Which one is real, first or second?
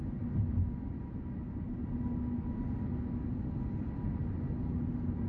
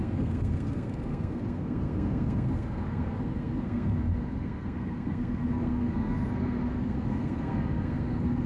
first